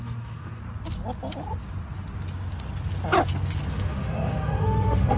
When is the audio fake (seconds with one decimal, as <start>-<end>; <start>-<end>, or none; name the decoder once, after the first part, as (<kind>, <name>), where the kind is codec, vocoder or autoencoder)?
0.0-0.6 (autoencoder, DAC-VAE); 3.7-5.2